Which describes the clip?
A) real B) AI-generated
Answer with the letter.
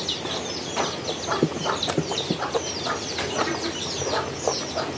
A